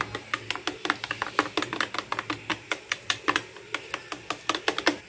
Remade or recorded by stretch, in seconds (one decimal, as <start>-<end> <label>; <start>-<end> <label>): 0.0-2.5 recorded; 2.5-3.6 remade; 3.6-5.1 recorded